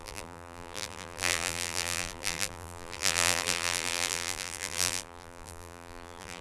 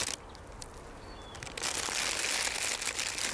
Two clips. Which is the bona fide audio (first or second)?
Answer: second